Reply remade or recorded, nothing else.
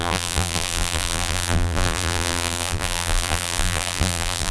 remade